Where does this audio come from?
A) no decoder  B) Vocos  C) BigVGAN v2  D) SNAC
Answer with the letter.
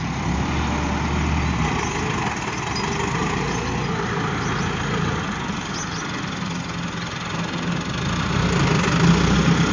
A